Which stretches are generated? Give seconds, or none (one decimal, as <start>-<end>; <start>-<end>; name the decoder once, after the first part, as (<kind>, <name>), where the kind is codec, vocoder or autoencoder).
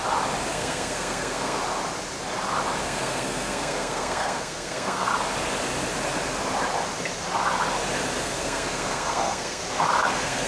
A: 0.5-1.6 (codec, SNAC); 2.8-5.1; 8.2-9.6; 10.1-10.5